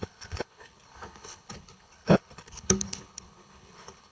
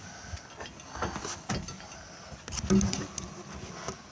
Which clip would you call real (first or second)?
second